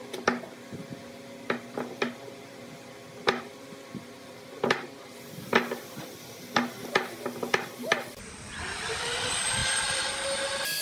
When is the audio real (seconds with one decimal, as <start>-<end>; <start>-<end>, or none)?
0.0-10.8